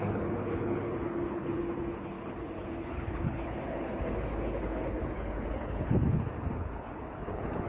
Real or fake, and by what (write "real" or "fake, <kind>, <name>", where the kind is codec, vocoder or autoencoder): fake, codec, HILCodec